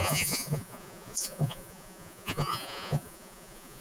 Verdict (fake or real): fake